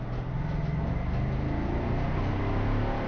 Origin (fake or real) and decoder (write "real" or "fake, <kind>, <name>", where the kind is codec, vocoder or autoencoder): real